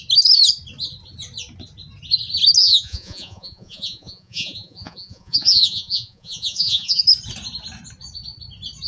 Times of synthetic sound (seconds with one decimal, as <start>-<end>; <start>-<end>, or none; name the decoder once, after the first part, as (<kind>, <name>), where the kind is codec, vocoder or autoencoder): 2.6-7.0 (vocoder, Vocos)